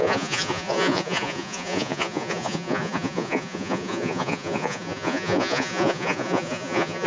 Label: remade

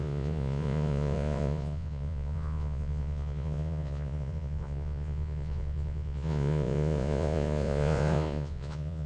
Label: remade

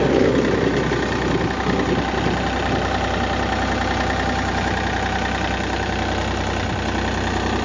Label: recorded